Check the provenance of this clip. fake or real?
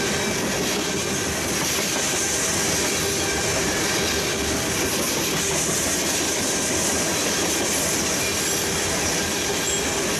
real